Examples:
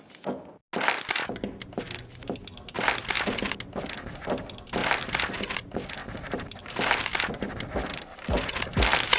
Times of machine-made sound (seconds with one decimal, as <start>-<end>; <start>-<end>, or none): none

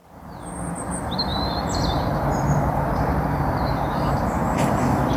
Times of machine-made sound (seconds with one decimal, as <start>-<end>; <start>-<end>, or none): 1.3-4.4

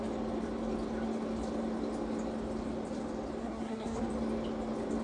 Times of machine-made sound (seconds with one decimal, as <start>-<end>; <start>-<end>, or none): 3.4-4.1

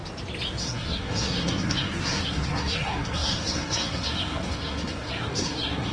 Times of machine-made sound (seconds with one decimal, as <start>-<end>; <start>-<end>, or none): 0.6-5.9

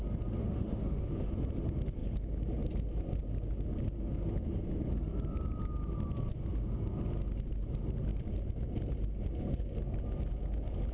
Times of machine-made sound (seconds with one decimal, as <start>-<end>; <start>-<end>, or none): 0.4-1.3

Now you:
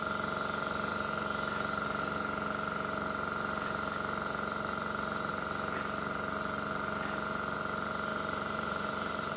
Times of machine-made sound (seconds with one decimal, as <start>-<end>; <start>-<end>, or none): 8.1-9.4

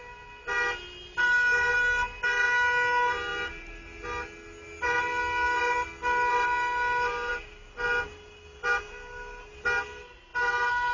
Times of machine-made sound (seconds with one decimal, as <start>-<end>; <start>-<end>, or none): none

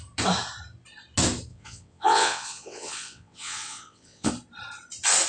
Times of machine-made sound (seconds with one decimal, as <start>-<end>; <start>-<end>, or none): 1.5-4.3